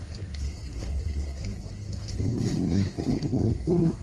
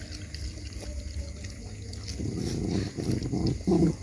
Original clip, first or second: second